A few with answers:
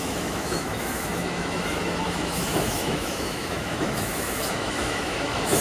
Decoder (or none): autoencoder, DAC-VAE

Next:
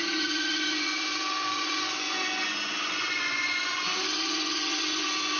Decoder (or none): vocoder, Vocos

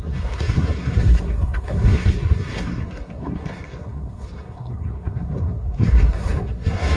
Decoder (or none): codec, SNAC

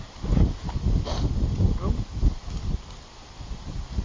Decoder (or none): none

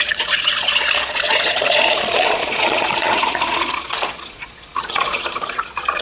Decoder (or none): vocoder, Vocos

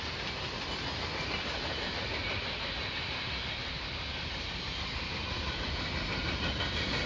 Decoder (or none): none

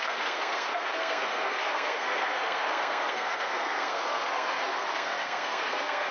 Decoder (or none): codec, SNAC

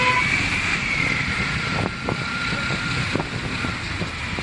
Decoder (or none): none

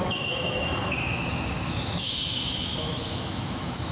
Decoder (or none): autoencoder, DAC-VAE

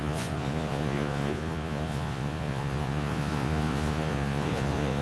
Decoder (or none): vocoder, Vocos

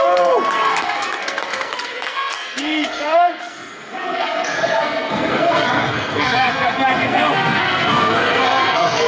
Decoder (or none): codec, SNAC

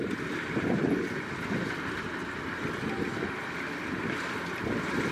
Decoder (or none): none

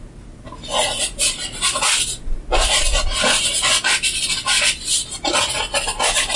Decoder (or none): none